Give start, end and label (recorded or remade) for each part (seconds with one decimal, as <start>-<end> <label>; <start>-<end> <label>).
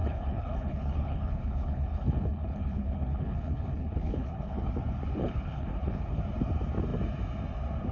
0.0-4.7 remade; 4.7-5.2 recorded; 5.2-6.2 remade; 6.2-7.9 recorded